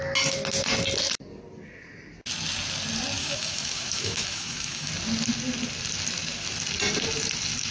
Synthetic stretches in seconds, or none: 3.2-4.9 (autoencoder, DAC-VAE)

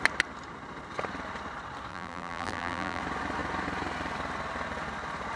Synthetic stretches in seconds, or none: 1.9-3.0 (vocoder, BigVGAN v2)

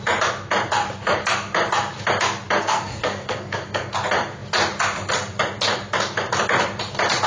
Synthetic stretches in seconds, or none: 2.6-3.9 (codec, SNAC)